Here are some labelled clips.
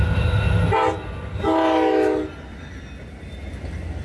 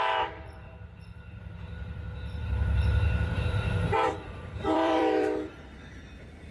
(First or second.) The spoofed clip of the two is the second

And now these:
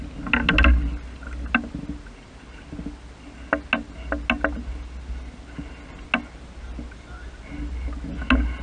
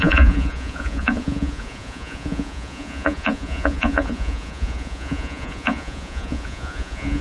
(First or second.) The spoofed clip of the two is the second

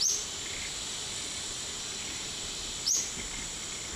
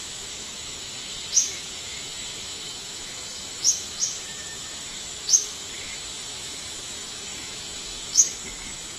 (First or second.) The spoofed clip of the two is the second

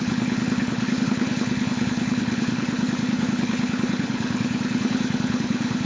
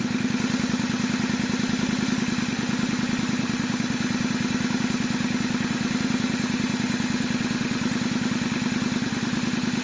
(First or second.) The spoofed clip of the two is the first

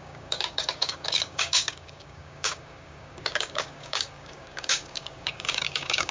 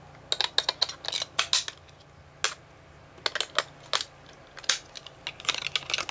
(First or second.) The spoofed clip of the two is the first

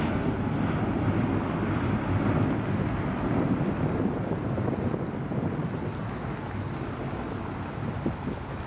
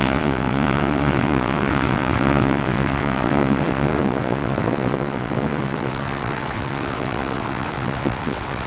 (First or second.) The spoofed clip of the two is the second